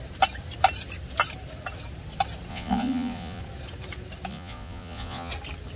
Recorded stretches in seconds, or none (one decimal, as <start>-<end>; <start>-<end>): 0.0-2.5; 3.4-4.3; 5.3-5.8